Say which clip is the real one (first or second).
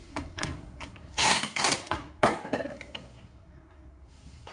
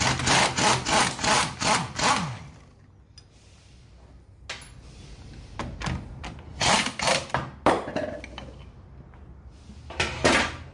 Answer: second